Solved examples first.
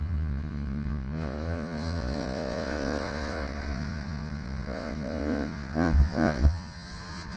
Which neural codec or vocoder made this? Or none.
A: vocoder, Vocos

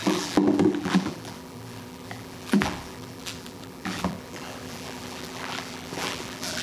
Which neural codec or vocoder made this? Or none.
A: vocoder, BigVGAN v2